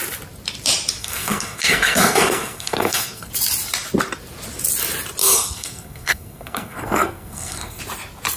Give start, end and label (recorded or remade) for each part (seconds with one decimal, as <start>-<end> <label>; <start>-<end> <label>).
0.0-1.0 recorded; 1.0-3.3 remade; 3.3-5.2 recorded; 5.2-7.8 remade; 7.8-8.4 recorded